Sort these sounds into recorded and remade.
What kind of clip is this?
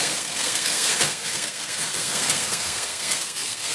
remade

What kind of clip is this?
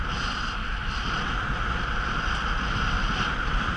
recorded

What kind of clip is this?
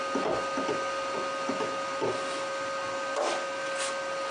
recorded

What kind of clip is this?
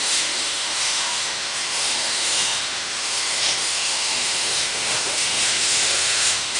remade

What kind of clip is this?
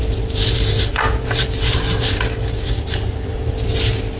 recorded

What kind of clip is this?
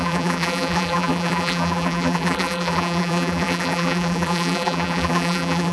remade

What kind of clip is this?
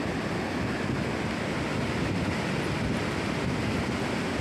recorded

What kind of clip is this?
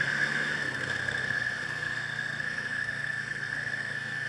remade